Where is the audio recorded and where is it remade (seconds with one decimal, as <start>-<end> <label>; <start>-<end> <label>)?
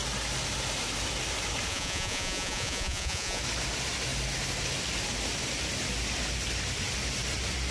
0.0-1.7 recorded; 1.7-3.4 remade; 3.4-7.7 recorded